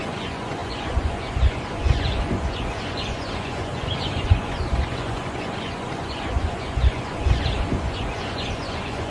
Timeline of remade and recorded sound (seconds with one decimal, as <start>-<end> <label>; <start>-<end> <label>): 0.0-9.1 remade

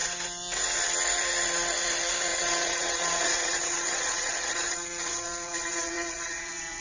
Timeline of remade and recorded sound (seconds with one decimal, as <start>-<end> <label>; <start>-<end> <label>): 0.0-2.3 recorded; 2.3-6.8 remade